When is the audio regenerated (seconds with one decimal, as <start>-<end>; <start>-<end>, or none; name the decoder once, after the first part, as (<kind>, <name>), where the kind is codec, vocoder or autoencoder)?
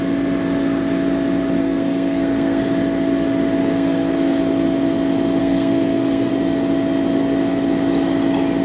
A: 1.6-2.6 (codec, SNAC); 3.6-4.4; 5.4-6.3